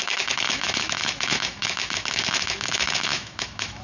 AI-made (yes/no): yes